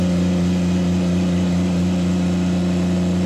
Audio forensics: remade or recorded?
recorded